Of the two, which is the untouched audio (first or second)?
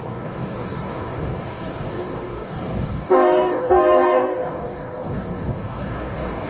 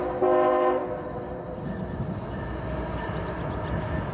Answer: second